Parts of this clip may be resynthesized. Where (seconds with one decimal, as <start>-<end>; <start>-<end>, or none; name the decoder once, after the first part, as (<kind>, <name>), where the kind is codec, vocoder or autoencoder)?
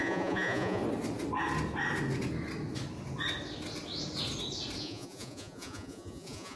0.0-0.8 (vocoder, Vocos); 4.8-6.6